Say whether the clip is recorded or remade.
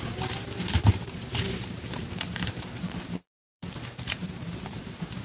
remade